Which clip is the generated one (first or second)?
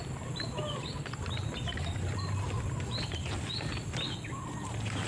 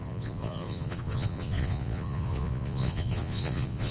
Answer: second